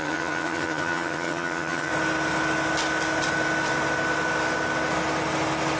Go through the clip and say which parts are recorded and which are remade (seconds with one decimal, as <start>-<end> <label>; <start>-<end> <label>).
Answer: 0.0-1.9 remade; 1.9-5.8 recorded